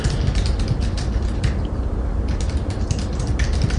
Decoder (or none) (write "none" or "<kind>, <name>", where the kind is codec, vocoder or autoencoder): none